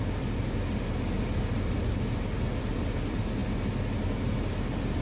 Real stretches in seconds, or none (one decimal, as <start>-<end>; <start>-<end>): 0.0-5.0